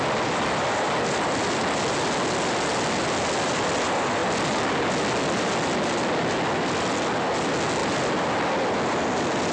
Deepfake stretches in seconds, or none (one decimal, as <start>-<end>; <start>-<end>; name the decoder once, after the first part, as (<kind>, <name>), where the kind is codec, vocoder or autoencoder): none